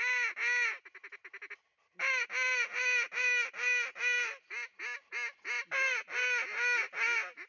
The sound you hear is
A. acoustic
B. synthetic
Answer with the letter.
A